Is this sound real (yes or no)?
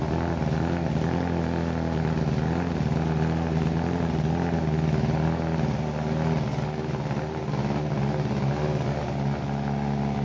yes